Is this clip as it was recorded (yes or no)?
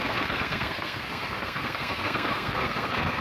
no